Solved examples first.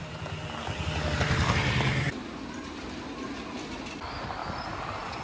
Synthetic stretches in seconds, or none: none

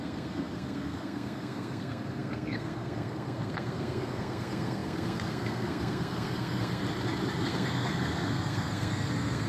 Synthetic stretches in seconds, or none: 0.0-6.8 (codec, SNAC); 7.4-9.5

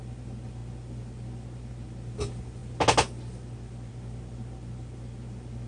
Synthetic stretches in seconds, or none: none

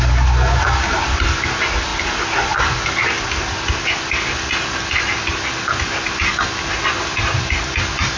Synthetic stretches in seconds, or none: none